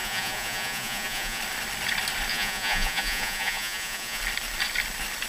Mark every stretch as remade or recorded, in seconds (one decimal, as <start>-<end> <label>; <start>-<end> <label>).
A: 0.0-1.4 remade; 1.4-2.3 recorded; 2.3-4.2 remade; 4.2-5.3 recorded